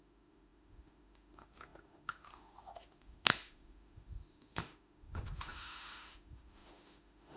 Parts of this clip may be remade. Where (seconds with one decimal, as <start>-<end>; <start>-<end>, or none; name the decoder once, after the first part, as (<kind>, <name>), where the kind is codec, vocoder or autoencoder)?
0.0-7.4 (autoencoder, DAC-VAE)

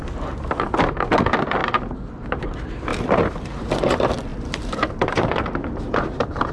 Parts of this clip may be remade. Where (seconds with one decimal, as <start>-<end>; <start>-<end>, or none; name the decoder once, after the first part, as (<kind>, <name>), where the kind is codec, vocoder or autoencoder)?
2.9-3.7 (vocoder, BigVGAN v2); 4.3-6.5